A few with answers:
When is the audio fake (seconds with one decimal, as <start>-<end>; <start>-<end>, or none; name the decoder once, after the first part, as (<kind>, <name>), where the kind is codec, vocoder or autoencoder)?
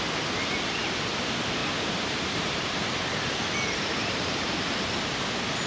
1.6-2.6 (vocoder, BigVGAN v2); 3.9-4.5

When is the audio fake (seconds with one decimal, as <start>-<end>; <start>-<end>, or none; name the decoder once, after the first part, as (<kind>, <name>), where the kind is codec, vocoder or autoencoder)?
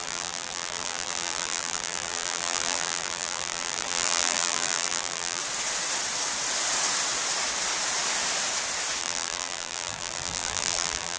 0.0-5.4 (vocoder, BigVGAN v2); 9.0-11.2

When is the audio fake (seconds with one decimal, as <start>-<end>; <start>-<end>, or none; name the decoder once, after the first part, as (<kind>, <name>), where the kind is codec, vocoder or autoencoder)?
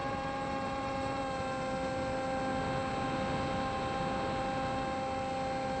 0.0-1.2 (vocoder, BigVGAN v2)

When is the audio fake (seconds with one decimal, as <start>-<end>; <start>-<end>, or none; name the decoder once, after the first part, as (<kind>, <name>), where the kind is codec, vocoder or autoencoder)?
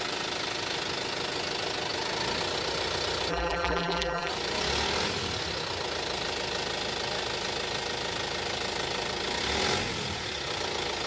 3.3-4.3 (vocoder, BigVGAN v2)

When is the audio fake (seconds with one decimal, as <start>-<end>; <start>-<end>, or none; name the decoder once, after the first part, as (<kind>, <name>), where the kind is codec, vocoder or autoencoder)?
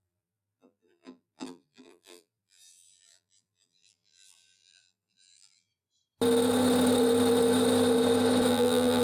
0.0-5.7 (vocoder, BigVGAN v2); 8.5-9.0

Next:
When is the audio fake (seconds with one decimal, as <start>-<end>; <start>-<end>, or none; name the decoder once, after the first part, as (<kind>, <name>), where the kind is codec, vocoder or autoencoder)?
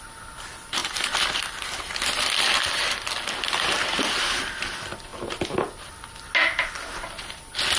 0.8-4.3 (vocoder, BigVGAN v2)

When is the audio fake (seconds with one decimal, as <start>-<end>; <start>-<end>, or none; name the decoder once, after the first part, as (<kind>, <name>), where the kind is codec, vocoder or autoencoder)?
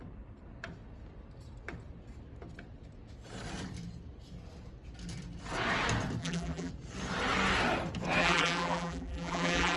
6.2-6.7 (vocoder, BigVGAN v2); 8.2-9.8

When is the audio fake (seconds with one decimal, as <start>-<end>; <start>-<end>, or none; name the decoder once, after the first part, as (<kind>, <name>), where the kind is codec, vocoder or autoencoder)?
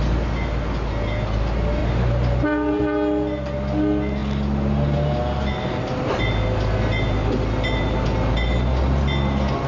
1.8-2.8 (vocoder, BigVGAN v2)